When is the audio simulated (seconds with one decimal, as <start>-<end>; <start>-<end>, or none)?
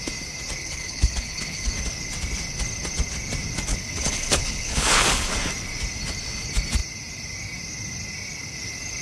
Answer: 0.6-1.7; 3.7-5.3